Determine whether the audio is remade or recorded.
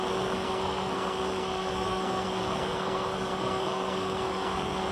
remade